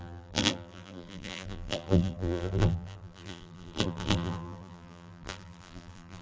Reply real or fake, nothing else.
fake